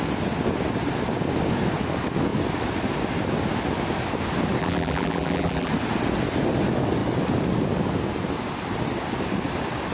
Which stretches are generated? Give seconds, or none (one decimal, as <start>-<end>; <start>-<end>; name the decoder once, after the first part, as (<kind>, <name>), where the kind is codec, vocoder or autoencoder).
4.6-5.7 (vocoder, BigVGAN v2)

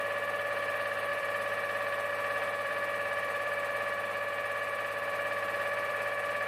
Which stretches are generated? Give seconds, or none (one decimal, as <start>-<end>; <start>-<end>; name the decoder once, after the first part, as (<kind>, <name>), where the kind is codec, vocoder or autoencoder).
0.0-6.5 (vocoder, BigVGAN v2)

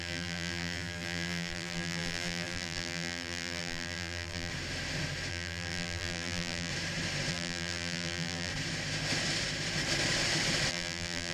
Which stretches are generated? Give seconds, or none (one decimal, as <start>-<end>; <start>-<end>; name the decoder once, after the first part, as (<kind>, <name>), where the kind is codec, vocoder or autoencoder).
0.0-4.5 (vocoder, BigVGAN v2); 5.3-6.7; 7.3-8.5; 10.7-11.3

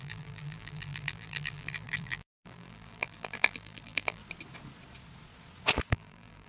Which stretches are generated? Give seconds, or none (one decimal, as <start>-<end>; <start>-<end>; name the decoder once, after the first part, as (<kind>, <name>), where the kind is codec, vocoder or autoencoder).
0.0-4.2 (vocoder, BigVGAN v2); 5.9-6.5

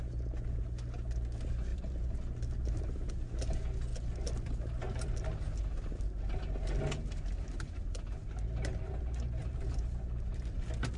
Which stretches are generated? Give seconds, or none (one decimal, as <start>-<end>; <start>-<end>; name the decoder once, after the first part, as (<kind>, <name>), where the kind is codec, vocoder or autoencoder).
1.7-3.1 (vocoder, BigVGAN v2); 9.4-11.0

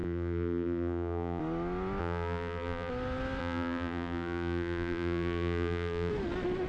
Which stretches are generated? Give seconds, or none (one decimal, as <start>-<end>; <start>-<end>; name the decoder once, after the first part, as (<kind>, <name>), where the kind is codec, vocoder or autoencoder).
0.0-1.4 (vocoder, BigVGAN v2); 2.0-2.9; 3.4-6.1

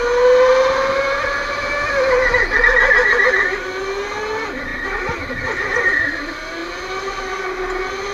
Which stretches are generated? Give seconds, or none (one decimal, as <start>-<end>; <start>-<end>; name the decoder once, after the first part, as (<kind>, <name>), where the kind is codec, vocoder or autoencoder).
none

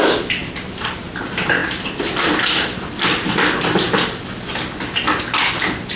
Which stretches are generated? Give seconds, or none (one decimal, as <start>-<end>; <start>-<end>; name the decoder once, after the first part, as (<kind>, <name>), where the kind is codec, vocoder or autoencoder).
0.4-1.0 (vocoder, BigVGAN v2)